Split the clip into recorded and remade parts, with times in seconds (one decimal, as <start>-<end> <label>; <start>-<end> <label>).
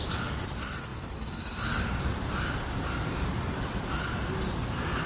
0.0-5.1 recorded